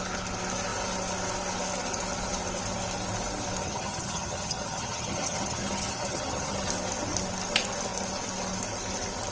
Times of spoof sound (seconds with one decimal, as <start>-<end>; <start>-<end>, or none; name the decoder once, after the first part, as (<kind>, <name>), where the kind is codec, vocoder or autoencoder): 3.6-6.7 (vocoder, HiFi-GAN)